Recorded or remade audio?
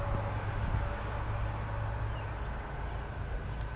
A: recorded